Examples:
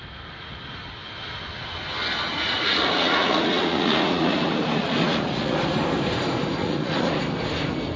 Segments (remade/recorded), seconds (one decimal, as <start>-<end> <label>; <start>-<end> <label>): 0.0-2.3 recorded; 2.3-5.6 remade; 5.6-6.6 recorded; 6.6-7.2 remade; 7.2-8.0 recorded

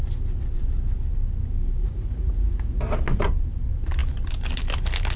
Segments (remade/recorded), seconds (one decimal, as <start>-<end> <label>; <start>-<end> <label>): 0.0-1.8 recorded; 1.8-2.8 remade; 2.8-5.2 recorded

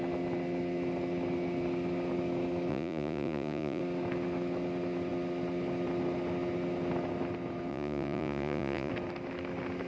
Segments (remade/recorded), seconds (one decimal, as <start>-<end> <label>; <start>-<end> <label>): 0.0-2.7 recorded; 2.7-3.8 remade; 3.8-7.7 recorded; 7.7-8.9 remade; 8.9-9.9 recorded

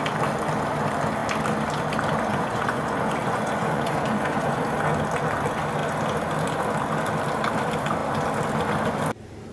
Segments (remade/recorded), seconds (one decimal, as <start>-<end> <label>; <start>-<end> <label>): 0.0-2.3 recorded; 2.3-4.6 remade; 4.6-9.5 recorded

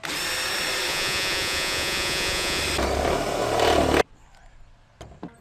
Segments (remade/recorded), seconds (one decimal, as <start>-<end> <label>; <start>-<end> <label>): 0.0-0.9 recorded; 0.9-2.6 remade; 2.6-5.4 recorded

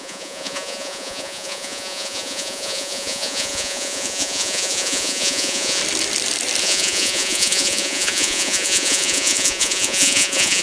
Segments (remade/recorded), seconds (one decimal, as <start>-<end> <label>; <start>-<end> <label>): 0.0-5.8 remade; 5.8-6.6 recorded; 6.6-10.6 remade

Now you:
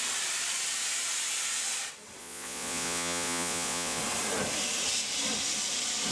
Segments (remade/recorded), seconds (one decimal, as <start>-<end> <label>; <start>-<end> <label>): 0.0-2.2 recorded; 2.2-4.0 remade; 4.0-6.1 recorded